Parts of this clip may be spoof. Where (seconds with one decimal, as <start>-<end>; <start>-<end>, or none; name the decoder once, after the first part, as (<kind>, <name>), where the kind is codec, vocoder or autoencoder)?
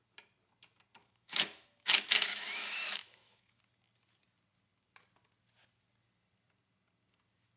1.0-3.6 (autoencoder, DAC-VAE)